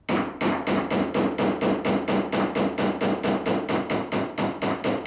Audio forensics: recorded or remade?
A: recorded